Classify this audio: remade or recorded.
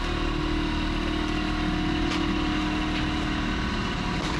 recorded